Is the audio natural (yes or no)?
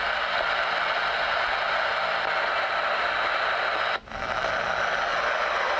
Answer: yes